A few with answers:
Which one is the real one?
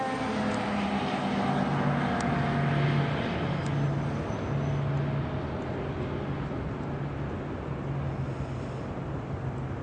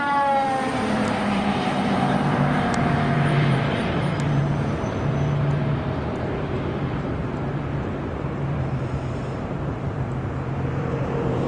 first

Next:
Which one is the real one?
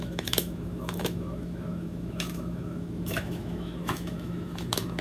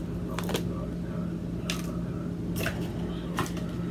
second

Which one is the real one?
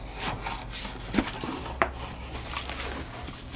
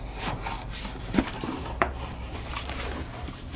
first